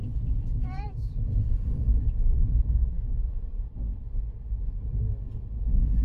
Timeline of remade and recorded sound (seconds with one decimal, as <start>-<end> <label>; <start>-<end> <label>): 0.0-3.4 remade; 3.4-6.0 recorded